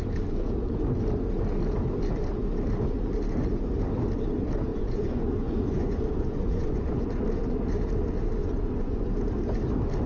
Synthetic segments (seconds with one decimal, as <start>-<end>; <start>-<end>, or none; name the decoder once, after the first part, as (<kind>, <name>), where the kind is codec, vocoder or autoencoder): 4.7-7.0 (vocoder, Vocos); 8.4-9.1